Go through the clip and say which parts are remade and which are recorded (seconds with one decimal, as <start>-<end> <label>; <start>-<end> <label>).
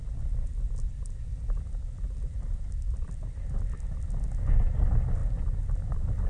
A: 0.0-6.3 recorded